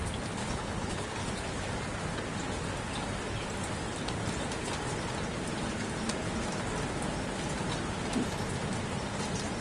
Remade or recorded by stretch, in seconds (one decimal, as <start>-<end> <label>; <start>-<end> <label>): 0.0-0.4 recorded; 0.4-1.3 remade; 1.3-9.6 recorded